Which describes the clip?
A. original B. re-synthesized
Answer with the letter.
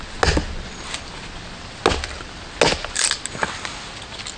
A